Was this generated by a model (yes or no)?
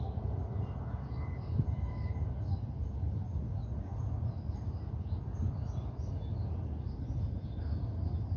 no